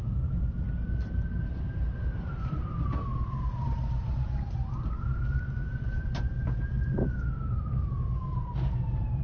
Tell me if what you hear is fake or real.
fake